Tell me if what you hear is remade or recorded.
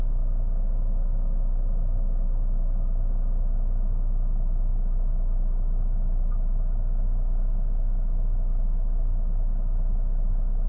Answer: recorded